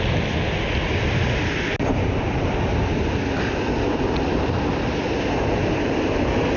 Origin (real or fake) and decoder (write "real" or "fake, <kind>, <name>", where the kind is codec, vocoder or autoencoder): real